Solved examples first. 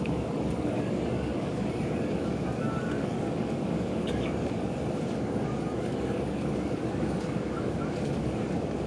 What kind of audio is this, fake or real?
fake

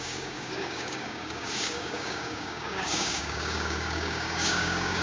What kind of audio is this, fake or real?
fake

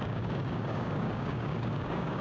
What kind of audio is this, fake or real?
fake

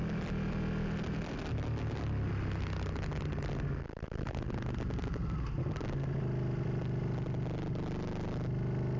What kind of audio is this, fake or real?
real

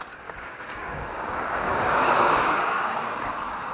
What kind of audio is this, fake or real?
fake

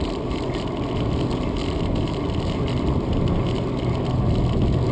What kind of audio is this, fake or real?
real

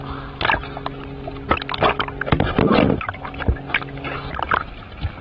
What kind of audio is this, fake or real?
real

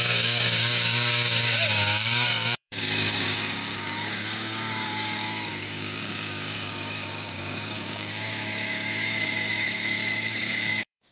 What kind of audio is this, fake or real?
fake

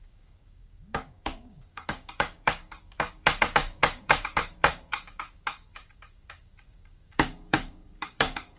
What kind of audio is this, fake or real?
fake